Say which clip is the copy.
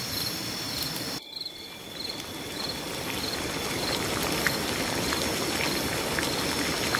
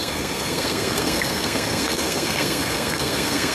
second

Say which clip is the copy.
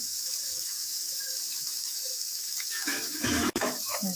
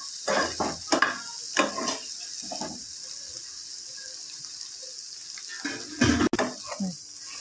first